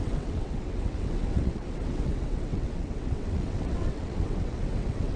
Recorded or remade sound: remade